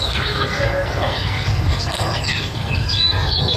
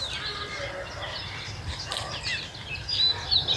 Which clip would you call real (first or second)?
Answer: second